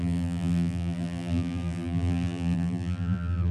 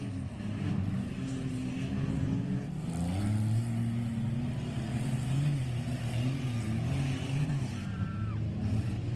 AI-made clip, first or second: first